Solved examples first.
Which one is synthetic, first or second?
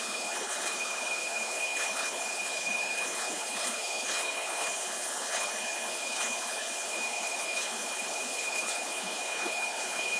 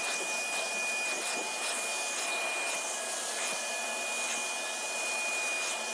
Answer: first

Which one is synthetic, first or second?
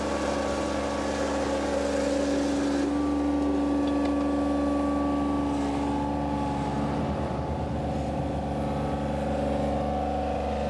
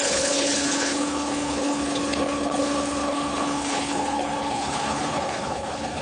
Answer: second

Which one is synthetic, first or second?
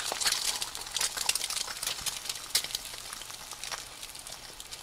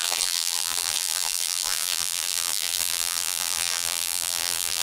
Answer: second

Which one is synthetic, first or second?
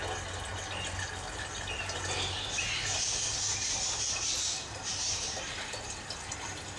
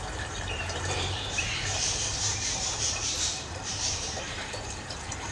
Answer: second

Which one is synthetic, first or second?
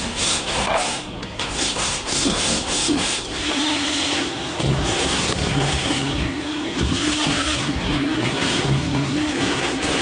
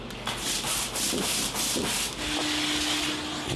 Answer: first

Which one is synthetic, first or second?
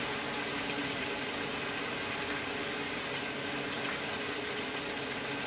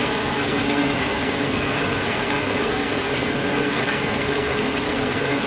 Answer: second